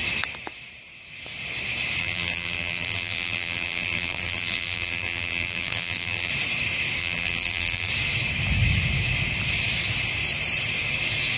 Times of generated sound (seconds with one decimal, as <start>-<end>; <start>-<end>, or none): 2.0-6.3; 7.0-7.9